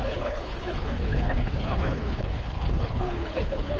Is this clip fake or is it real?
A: fake